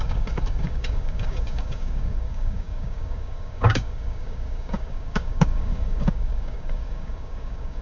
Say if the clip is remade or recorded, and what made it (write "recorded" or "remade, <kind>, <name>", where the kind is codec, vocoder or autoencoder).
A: remade, codec, DAC